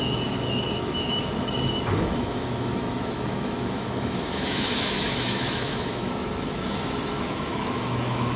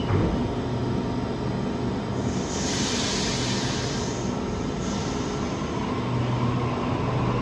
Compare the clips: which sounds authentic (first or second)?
second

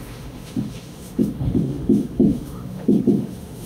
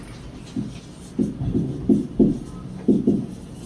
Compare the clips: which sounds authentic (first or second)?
second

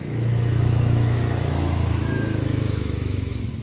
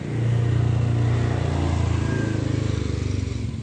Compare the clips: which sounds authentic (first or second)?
second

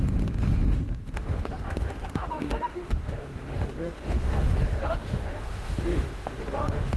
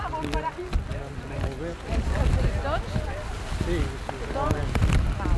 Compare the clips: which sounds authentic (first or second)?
second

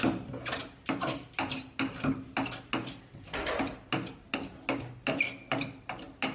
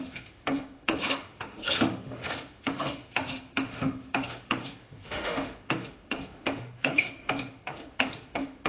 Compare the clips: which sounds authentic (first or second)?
first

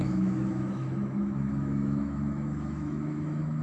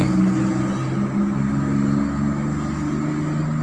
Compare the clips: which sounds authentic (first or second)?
second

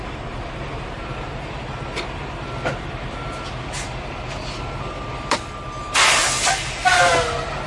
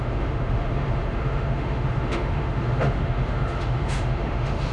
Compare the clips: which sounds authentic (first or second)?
first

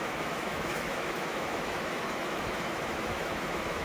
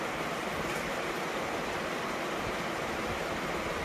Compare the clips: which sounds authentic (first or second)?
second